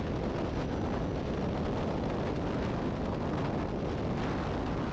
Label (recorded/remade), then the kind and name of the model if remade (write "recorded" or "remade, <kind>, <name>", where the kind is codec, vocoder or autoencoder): recorded